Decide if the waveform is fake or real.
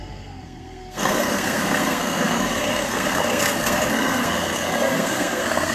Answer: fake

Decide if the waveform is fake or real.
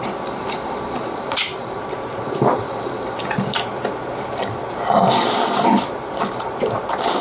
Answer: fake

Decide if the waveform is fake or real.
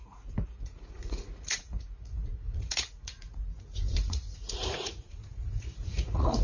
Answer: fake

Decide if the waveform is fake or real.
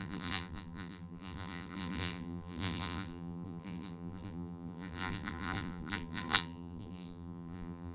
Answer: fake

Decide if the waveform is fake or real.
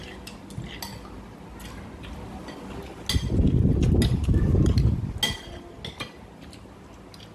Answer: real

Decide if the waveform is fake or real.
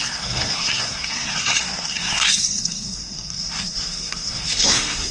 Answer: fake